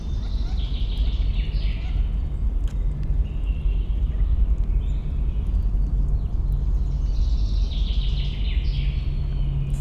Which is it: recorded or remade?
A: recorded